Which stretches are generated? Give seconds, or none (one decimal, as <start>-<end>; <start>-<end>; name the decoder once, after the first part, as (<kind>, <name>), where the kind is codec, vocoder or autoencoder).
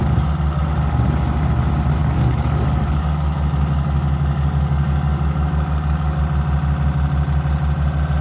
2.0-6.2 (codec, DAC)